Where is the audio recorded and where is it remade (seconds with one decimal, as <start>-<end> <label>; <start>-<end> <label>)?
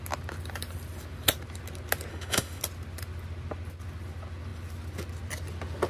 0.0-2.1 recorded; 2.1-2.6 remade; 2.6-5.9 recorded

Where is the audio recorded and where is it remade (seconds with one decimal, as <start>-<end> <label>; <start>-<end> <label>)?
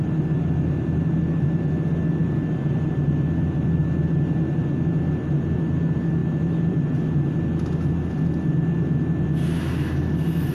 0.0-2.2 recorded; 2.2-3.8 remade; 3.8-6.2 recorded; 6.2-7.4 remade; 7.4-10.5 recorded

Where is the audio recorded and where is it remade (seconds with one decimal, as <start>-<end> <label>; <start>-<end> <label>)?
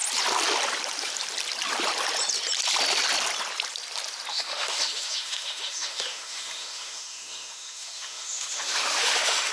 0.0-4.3 recorded; 4.3-9.5 remade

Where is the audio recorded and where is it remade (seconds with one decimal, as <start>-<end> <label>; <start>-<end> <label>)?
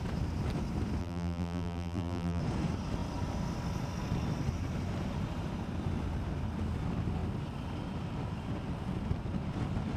0.0-1.0 recorded; 1.0-2.4 remade; 2.4-10.0 recorded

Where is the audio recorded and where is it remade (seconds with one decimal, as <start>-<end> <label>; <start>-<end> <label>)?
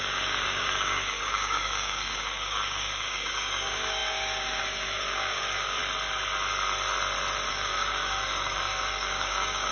0.0-5.8 remade; 5.8-7.5 recorded; 7.5-9.7 remade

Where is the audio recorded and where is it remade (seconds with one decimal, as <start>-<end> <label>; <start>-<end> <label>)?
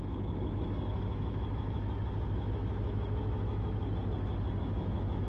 0.0-3.8 remade; 3.8-4.6 recorded; 4.6-5.3 remade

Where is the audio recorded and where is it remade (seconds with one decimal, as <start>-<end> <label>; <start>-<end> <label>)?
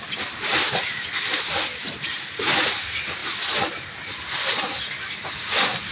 0.0-5.9 recorded